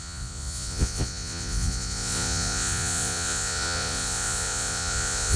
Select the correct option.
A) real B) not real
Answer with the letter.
B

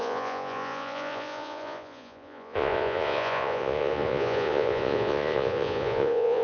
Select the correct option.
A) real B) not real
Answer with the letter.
B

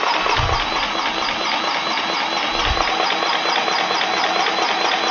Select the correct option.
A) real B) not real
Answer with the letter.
A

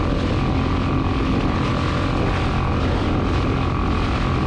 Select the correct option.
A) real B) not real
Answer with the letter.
A